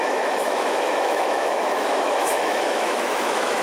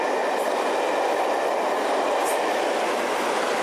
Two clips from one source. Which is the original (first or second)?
second